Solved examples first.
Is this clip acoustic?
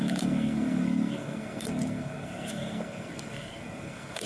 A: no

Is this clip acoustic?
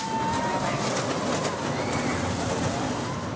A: yes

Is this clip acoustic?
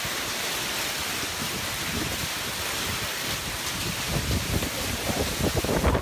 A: yes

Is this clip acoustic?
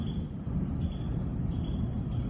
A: yes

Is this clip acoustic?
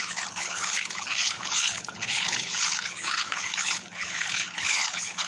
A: no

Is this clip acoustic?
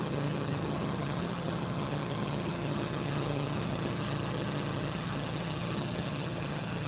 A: no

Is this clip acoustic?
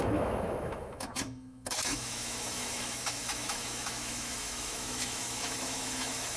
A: no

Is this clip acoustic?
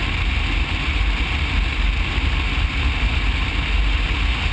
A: yes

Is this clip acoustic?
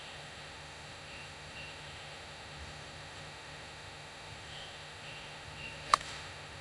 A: no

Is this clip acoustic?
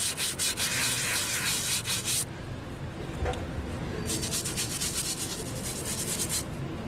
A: yes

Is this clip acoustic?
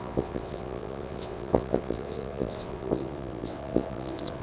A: no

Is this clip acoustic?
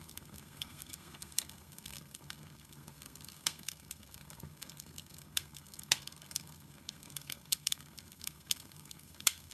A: no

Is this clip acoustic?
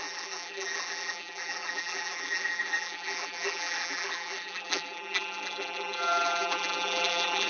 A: no